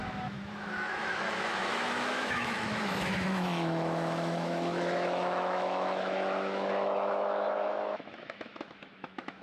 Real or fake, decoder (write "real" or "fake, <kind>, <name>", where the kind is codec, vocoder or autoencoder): fake, autoencoder, DAC-VAE